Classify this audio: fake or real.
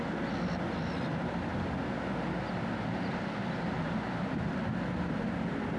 real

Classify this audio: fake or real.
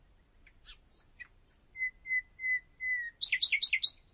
real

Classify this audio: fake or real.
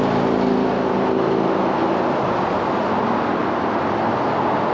real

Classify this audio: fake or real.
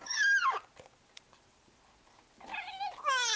real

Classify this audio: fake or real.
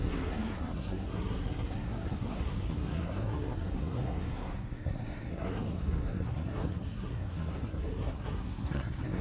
fake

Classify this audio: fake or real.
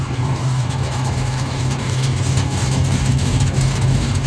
fake